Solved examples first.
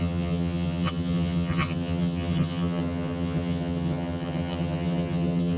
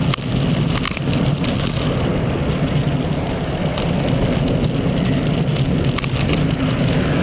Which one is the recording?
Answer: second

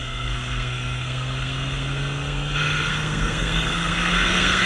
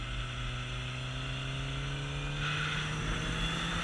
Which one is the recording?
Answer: second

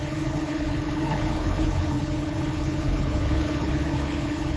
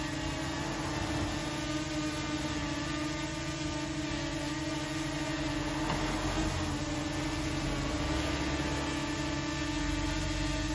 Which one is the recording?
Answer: second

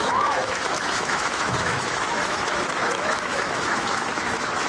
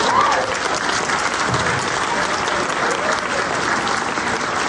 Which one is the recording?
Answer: second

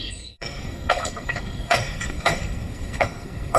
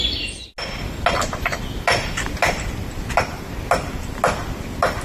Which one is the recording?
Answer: second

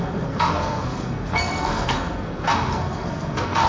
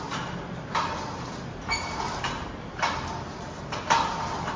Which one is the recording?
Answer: second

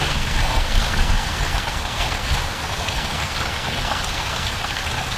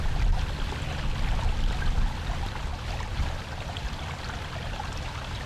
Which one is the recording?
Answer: second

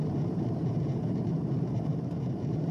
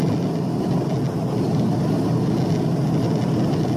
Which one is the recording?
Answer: second